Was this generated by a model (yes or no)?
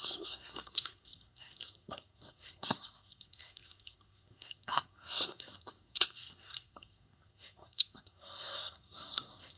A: yes